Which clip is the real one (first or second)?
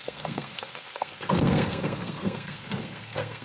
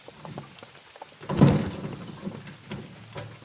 second